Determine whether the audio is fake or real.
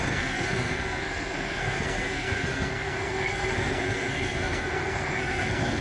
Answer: fake